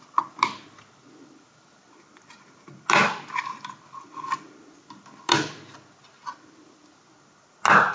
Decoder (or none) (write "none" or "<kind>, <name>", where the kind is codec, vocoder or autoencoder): none